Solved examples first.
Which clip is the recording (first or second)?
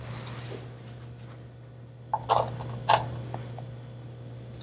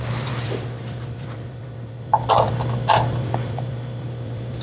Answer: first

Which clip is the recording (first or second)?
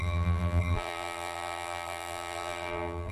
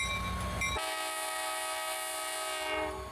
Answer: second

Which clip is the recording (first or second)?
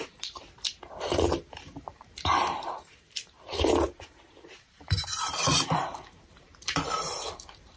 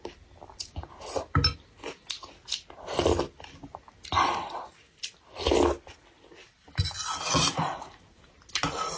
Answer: second